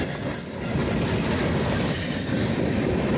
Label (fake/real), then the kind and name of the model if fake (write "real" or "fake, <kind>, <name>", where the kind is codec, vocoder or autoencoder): real